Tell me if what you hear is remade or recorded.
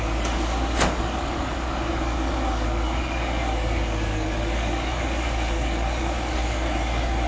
remade